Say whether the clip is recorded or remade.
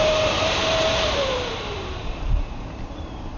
remade